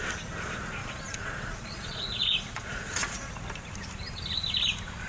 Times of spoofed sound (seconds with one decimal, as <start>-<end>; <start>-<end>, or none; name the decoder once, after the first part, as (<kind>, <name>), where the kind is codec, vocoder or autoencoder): 0.8-3.3 (vocoder, Vocos)